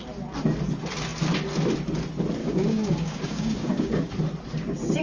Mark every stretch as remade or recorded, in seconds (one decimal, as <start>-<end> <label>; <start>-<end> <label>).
0.0-2.4 recorded; 2.4-4.1 remade; 4.1-5.0 recorded